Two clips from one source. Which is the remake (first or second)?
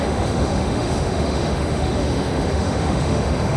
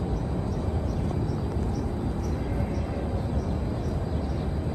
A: first